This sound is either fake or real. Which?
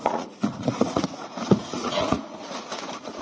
fake